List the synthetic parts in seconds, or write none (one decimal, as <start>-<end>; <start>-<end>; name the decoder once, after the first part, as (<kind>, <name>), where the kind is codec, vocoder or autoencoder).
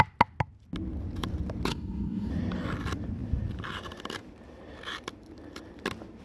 1.7-2.3 (codec, DAC)